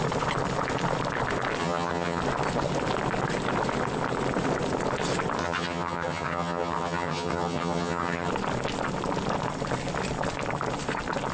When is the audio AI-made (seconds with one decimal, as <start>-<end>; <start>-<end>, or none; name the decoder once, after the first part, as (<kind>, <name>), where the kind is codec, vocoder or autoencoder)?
1.6-2.2 (vocoder, HiFi-GAN); 5.4-8.3